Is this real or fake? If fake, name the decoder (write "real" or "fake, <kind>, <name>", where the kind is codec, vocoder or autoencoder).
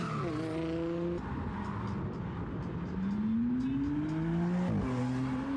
real